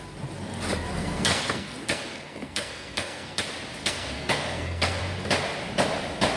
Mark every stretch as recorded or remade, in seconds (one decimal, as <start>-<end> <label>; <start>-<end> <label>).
0.0-0.9 recorded; 0.9-3.4 remade; 3.4-3.8 recorded; 3.8-5.0 remade; 5.0-6.4 recorded